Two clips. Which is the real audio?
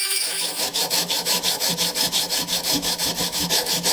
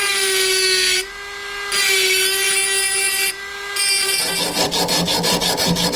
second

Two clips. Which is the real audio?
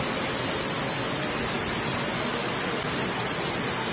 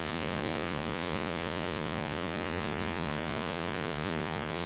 first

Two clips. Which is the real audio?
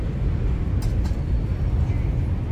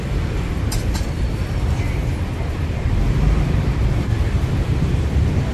first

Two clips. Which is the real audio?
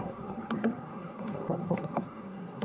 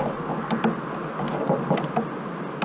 second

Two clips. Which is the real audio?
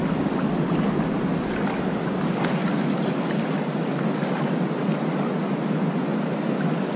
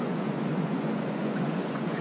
first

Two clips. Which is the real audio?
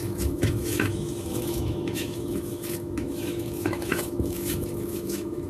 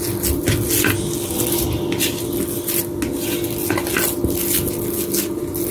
second